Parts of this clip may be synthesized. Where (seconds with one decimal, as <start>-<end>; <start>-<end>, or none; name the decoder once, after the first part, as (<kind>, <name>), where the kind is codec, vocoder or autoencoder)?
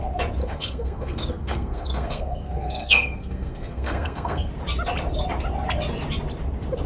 0.4-4.5 (codec, SNAC)